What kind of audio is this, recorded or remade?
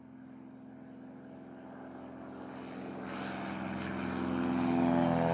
recorded